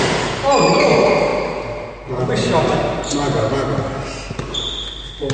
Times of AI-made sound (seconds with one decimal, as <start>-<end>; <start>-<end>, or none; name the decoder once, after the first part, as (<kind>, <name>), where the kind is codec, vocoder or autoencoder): none